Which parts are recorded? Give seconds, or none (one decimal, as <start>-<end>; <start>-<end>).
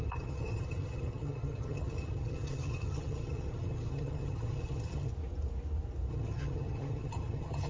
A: 5.1-6.1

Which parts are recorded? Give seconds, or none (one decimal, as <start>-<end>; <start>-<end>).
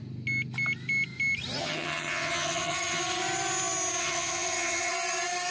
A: 0.0-1.6; 3.0-4.0; 4.9-5.5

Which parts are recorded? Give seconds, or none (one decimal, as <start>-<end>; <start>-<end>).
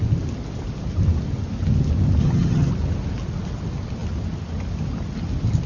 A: 0.0-2.2; 2.7-5.7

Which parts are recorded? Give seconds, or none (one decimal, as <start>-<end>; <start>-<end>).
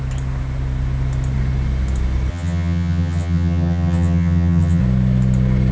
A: 0.0-2.3; 4.8-5.7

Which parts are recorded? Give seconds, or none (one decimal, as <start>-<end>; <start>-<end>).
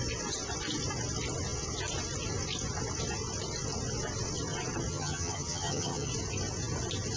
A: 0.0-4.9; 6.1-7.2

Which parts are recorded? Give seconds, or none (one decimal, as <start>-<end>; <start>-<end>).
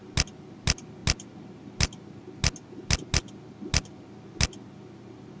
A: 0.0-5.4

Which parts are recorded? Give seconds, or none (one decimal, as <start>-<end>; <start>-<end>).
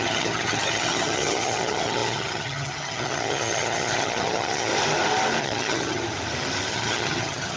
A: 4.7-5.4; 6.0-6.7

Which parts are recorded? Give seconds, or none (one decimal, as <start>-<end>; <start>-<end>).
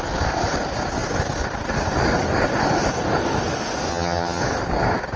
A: 0.0-3.9; 4.4-5.2